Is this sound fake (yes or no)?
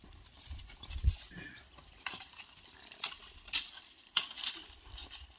yes